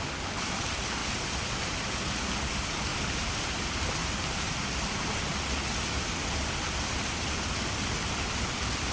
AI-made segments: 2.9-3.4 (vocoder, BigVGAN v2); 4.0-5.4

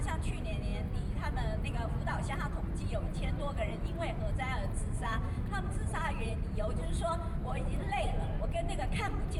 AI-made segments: 3.1-3.7 (vocoder, BigVGAN v2); 5.1-8.4